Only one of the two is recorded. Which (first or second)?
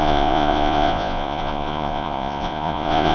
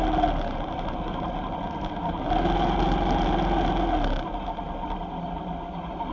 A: second